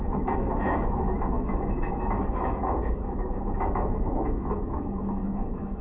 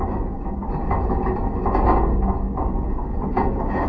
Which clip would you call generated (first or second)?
first